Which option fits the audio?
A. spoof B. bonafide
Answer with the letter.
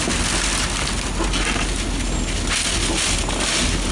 B